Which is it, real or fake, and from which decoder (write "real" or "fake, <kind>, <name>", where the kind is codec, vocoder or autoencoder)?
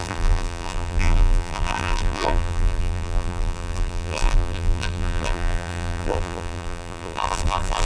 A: fake, vocoder, BigVGAN v2